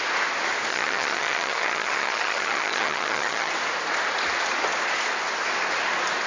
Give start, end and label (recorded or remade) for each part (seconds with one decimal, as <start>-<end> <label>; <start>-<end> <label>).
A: 0.0-0.7 recorded; 0.7-3.5 remade; 3.5-6.3 recorded